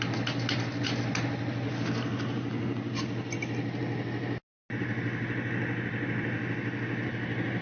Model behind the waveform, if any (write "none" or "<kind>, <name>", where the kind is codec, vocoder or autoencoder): none